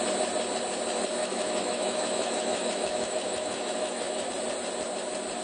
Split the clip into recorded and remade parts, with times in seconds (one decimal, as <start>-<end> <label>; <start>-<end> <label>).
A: 0.0-1.2 recorded; 1.2-4.3 remade; 4.3-5.4 recorded